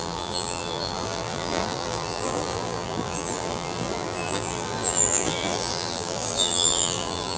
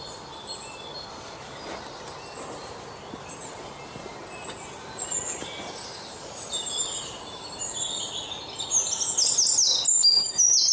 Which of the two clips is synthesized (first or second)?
first